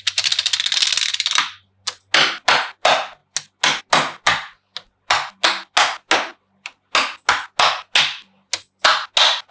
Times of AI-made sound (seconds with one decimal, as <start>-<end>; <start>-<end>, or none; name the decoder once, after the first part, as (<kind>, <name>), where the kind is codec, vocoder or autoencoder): none